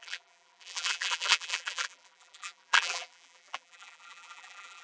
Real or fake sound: fake